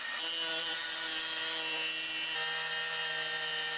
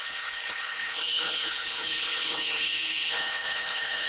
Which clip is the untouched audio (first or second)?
first